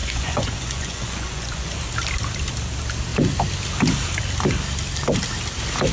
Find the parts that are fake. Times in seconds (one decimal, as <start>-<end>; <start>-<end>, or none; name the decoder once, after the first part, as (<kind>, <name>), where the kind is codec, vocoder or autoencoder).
0.0-1.7 (vocoder, Vocos)